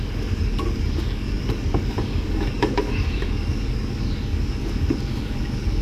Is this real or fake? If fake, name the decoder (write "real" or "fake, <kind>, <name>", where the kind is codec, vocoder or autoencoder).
fake, codec, DAC